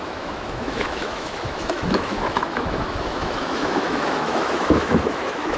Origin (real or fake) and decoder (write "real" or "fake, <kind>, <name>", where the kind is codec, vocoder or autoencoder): fake, autoencoder, DAC-VAE